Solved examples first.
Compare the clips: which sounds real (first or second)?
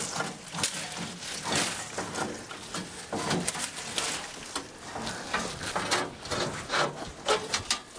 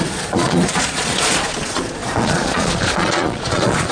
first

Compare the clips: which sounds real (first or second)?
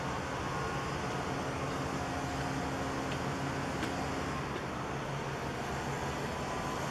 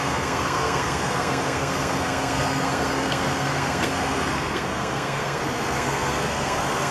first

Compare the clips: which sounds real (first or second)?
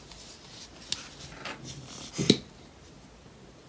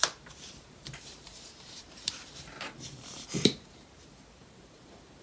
first